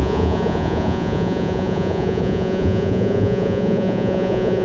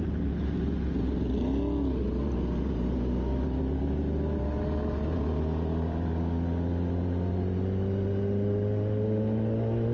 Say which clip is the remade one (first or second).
first